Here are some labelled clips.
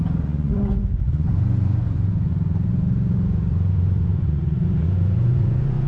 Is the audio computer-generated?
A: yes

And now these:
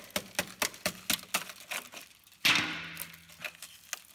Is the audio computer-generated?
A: no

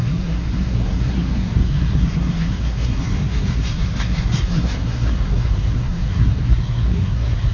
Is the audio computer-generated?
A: yes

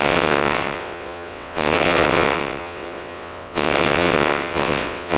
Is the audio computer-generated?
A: yes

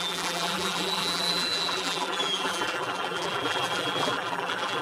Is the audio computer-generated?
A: yes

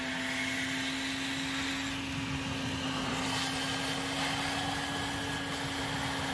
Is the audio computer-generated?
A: no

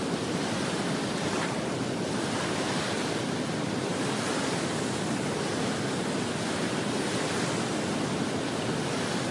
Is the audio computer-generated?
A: no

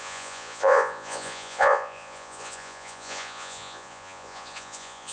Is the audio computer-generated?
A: yes